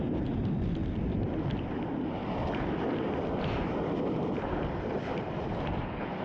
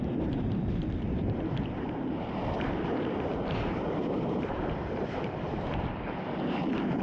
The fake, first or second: second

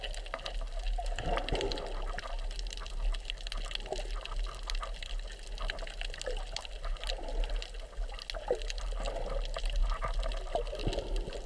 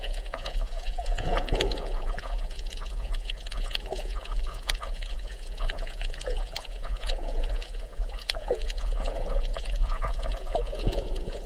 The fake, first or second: second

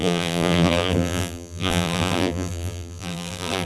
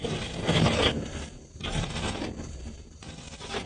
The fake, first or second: first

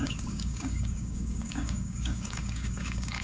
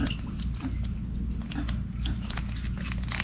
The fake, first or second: first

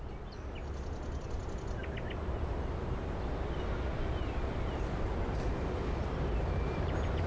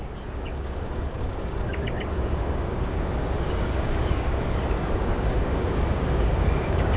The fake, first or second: second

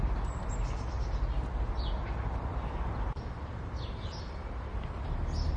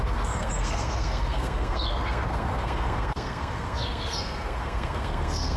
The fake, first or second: second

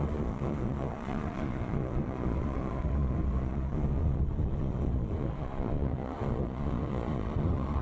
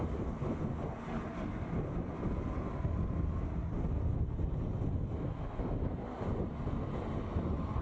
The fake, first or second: first